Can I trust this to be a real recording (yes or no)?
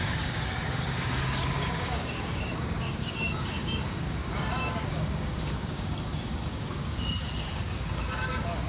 no